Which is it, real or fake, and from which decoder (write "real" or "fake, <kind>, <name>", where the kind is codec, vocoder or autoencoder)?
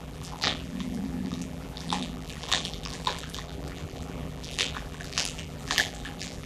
fake, vocoder, BigVGAN v2